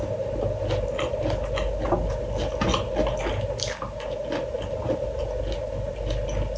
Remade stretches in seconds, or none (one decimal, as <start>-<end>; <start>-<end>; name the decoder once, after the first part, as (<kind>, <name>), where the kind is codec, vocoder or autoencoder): none

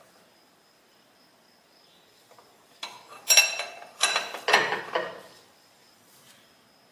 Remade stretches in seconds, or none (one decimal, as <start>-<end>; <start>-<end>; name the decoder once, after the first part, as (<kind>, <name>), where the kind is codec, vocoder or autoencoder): 0.0-6.9 (vocoder, BigVGAN v2)

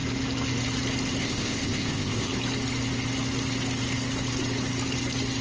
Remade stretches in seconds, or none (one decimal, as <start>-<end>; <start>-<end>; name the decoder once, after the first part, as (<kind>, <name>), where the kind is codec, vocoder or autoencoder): 1.2-2.3 (codec, ZipCodec)

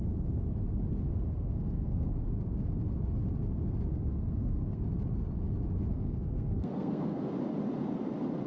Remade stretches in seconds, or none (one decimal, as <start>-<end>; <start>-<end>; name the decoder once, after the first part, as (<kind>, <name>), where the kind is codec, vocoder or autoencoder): 1.1-2.1 (codec, SNAC); 3.9-4.8; 5.9-7.3